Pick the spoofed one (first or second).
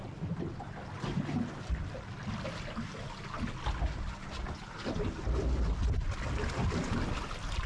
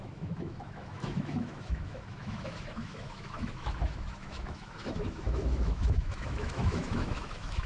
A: second